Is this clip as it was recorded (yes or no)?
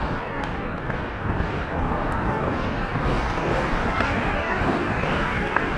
no